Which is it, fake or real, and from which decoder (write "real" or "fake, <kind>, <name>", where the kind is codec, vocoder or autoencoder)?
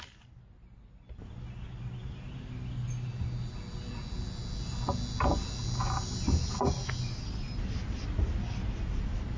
real